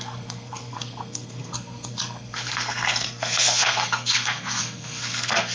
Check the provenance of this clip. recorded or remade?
remade